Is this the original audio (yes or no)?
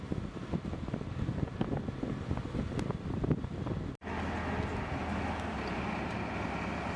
yes